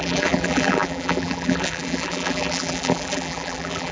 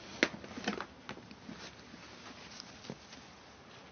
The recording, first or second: second